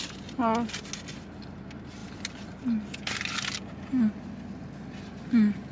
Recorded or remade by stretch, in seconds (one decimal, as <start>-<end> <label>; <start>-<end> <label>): 0.0-5.7 recorded